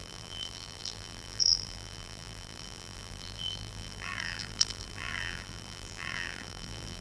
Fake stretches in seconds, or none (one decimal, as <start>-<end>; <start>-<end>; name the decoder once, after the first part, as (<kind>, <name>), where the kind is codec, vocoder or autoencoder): 0.0-7.0 (vocoder, BigVGAN v2)